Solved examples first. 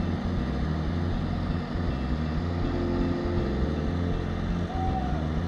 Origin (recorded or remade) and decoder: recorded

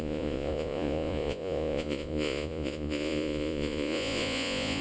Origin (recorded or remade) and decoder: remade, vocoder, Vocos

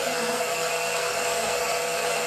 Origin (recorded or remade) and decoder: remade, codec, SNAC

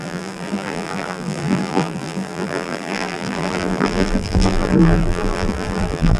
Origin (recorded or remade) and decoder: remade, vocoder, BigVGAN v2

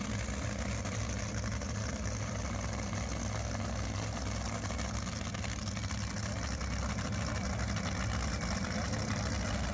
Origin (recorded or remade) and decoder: recorded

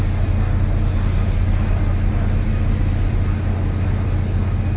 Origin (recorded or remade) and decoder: recorded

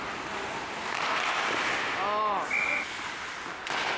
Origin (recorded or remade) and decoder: recorded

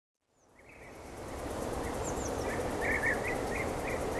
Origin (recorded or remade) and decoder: recorded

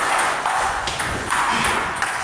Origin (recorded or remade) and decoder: remade, vocoder, Vocos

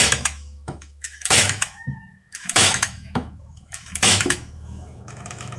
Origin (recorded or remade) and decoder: remade, autoencoder, DAC-VAE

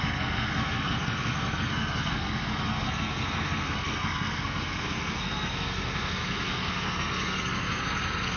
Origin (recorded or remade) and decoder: remade, codec, SNAC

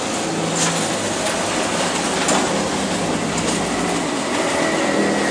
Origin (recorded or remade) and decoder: recorded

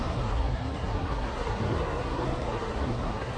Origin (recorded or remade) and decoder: remade, codec, SNAC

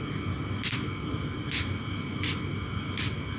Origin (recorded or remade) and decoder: recorded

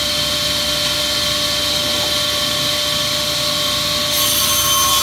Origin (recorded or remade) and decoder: recorded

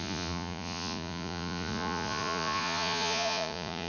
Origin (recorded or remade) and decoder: remade, vocoder, Vocos